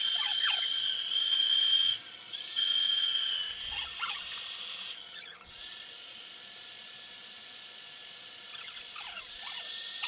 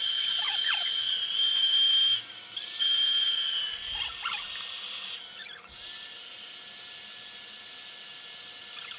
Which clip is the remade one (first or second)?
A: first